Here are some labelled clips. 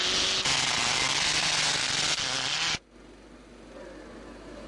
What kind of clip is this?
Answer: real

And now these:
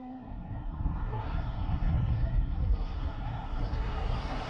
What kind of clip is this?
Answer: fake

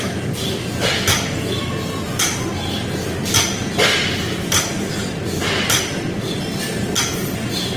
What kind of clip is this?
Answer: real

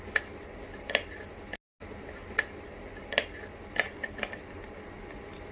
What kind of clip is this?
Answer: real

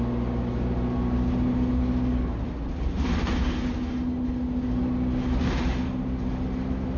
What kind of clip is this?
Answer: real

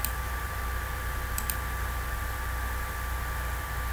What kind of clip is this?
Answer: real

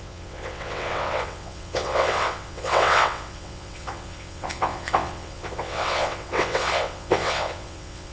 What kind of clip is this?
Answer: fake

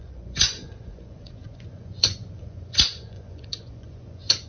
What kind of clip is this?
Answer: fake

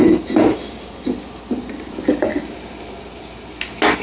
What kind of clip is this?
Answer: real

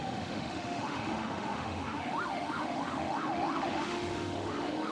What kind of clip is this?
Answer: fake